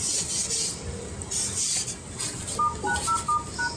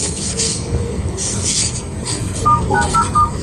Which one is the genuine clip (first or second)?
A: first